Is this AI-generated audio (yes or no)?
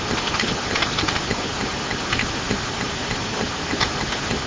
no